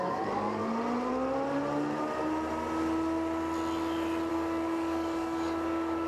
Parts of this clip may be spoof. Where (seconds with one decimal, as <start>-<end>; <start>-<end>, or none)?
0.0-0.6; 4.3-6.1